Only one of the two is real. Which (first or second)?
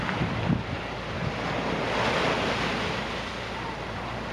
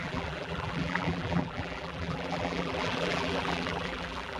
first